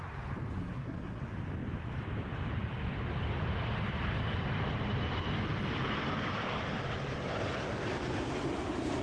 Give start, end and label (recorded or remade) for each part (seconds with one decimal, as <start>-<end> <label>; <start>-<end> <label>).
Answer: 0.0-0.6 recorded; 0.6-1.2 remade; 1.2-9.0 recorded